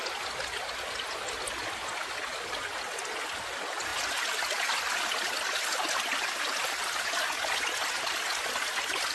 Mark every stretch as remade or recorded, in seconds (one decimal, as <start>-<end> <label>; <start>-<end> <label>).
0.0-9.1 recorded